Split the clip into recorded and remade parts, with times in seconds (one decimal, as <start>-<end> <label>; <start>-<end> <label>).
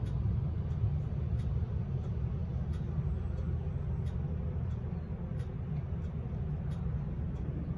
0.0-7.8 recorded